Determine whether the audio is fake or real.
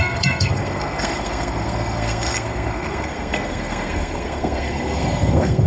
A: fake